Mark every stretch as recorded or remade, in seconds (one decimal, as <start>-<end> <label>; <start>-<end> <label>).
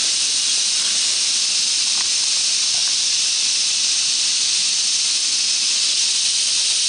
0.0-6.9 recorded